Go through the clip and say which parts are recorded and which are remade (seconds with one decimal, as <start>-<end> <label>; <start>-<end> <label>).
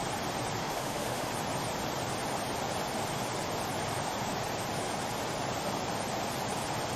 0.0-0.6 recorded; 0.6-1.3 remade; 1.3-7.0 recorded